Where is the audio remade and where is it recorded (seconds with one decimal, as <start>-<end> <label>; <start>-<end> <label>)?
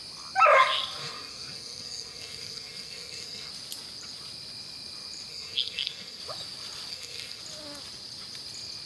0.0-1.0 recorded; 1.0-3.5 remade; 3.5-5.3 recorded; 5.3-6.2 remade; 6.2-6.9 recorded; 6.9-7.4 remade; 7.4-8.9 recorded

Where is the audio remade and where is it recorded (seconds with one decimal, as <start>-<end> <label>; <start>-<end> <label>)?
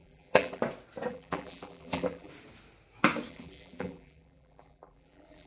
0.0-0.6 remade; 0.6-1.1 recorded; 1.1-2.3 remade; 2.3-3.3 recorded; 3.3-5.5 remade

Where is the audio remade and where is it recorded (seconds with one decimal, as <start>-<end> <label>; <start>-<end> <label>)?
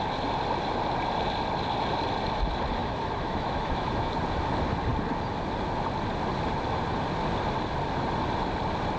0.0-2.8 recorded; 2.8-4.1 remade; 4.1-9.0 recorded